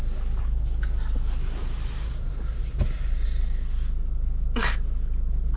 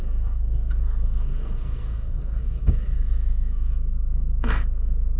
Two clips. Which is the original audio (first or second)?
first